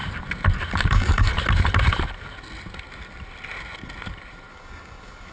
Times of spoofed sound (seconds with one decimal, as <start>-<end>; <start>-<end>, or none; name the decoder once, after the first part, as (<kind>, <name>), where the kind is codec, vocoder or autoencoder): 0.9-1.3 (codec, DAC); 4.5-5.3